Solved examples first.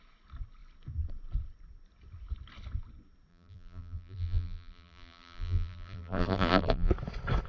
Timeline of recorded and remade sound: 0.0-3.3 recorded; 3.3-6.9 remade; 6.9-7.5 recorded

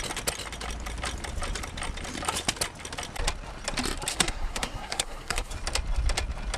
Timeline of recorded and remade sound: 0.0-4.1 recorded; 4.1-5.5 remade; 5.5-6.6 recorded

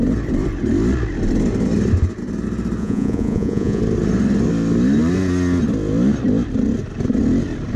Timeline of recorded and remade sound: 0.0-2.8 recorded; 2.8-3.8 remade; 3.8-7.8 recorded

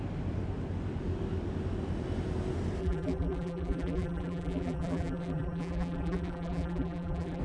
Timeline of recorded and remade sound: 0.0-2.8 recorded; 2.8-7.4 remade

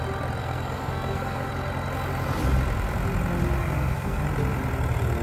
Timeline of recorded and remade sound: 0.0-0.4 recorded; 0.4-1.5 remade; 1.5-3.6 recorded; 3.6-4.2 remade; 4.2-5.2 recorded

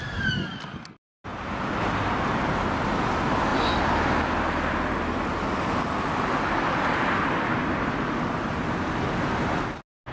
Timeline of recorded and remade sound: 0.0-10.1 recorded

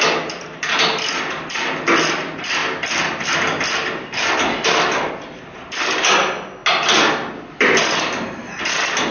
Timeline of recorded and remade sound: 0.0-9.1 recorded

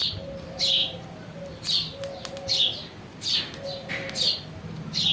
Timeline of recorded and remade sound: 0.0-5.1 recorded